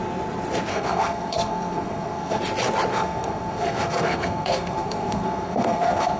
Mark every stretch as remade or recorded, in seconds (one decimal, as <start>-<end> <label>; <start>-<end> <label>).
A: 0.0-0.7 recorded; 0.7-2.4 remade; 2.4-2.9 recorded; 2.9-6.2 remade